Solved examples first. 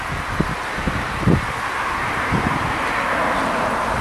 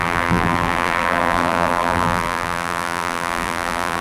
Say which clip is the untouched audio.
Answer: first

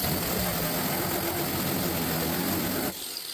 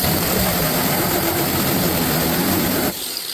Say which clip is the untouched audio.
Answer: first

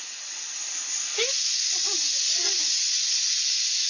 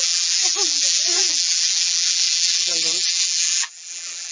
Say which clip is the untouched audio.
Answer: first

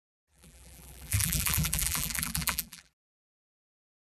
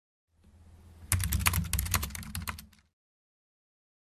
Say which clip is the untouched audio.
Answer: second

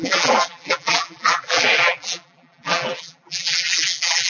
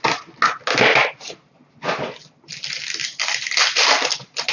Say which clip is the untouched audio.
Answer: second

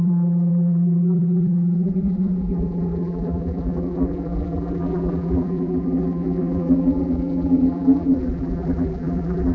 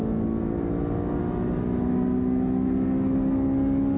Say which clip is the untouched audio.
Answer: second